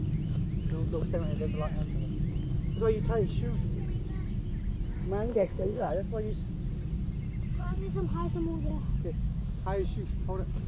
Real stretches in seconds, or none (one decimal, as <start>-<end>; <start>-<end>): 0.0-5.3; 5.9-10.7